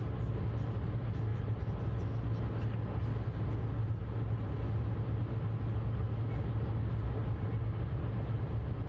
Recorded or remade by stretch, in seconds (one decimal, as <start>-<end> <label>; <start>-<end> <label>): 0.0-1.3 recorded; 1.3-1.8 remade; 1.8-3.8 recorded; 3.8-4.5 remade; 4.5-8.9 recorded